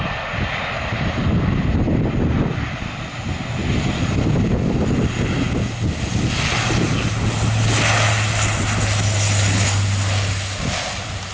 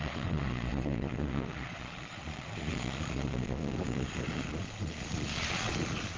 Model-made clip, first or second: second